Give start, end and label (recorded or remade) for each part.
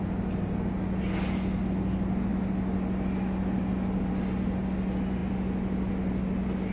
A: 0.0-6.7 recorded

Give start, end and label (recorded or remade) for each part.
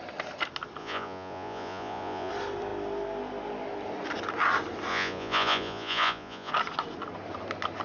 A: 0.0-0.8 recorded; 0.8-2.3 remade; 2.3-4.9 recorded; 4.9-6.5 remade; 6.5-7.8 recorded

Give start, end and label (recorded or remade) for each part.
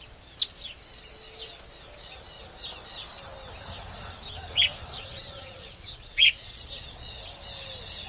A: 0.0-4.7 recorded; 4.7-7.2 remade; 7.2-8.1 recorded